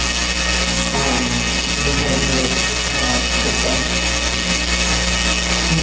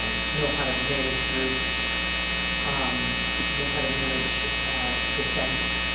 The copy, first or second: first